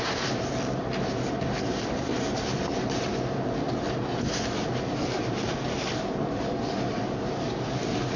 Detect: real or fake real